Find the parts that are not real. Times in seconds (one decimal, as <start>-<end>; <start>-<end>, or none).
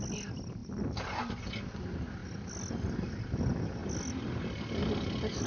none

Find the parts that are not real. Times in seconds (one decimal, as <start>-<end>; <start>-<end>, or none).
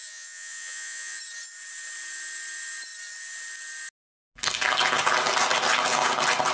0.0-1.2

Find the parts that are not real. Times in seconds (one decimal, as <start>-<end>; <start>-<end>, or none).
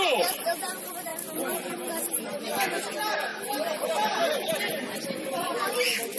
0.0-3.3; 5.2-6.2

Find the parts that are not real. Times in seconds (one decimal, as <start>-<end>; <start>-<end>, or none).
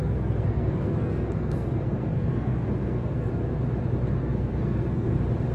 0.0-3.3; 4.2-5.1